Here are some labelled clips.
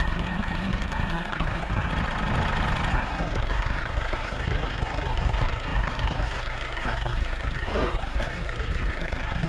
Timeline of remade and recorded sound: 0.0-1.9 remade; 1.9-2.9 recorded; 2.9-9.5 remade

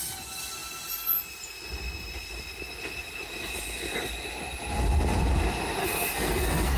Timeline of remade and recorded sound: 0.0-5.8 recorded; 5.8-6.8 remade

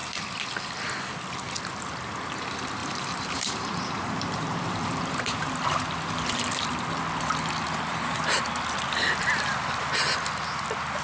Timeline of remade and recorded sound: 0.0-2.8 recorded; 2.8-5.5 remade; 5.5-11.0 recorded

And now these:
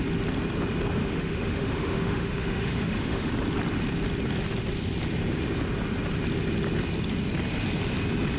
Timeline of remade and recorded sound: 0.0-1.0 recorded; 1.0-3.3 remade; 3.3-8.4 recorded